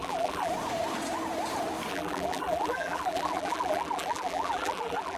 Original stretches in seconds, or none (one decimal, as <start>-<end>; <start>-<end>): 0.5-1.9